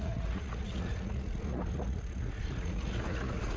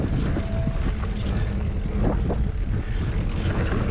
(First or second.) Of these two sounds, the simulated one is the first